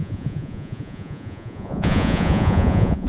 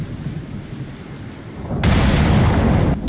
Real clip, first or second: second